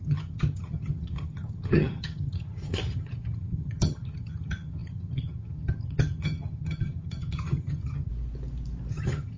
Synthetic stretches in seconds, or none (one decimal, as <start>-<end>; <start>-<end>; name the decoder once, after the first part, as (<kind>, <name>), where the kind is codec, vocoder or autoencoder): 0.0-8.1 (vocoder, HiFi-GAN); 8.9-9.4